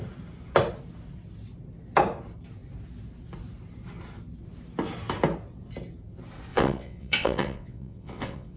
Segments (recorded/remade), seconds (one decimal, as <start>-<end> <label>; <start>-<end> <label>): 0.0-6.5 recorded; 6.5-8.6 remade